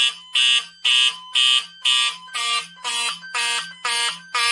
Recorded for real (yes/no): yes